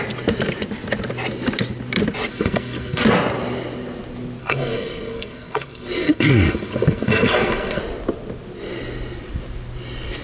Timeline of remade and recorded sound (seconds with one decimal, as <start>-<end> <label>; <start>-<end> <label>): 0.0-2.3 recorded; 2.3-3.0 remade; 3.0-4.4 recorded; 4.4-7.8 remade; 7.8-10.2 recorded